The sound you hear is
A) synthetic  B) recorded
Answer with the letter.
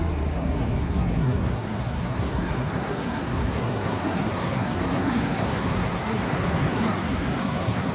A